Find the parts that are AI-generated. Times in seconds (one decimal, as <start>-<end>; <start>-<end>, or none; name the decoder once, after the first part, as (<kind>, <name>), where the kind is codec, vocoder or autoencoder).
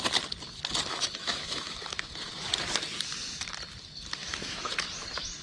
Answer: 0.9-2.1 (autoencoder, DAC-VAE); 4.2-4.7